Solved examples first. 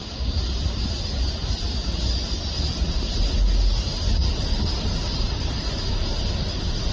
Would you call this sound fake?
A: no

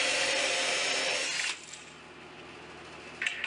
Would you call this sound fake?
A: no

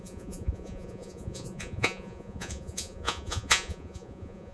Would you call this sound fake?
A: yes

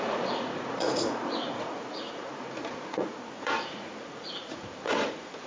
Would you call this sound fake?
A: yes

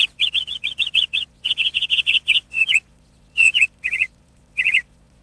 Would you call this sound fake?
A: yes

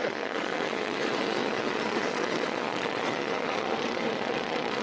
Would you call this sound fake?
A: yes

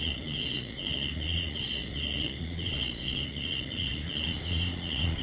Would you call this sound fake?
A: yes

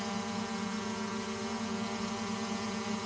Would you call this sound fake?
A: yes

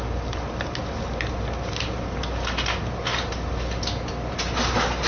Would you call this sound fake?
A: no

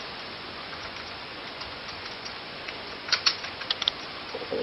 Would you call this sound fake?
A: yes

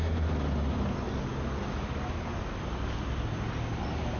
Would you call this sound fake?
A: no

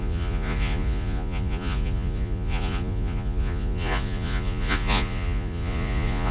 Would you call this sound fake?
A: yes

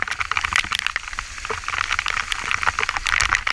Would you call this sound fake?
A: no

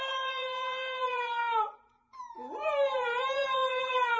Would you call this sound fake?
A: yes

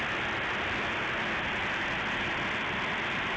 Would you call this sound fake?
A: no